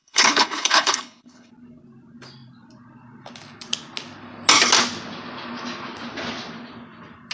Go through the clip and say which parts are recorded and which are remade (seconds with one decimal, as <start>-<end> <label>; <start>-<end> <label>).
0.0-1.5 remade; 1.5-7.3 recorded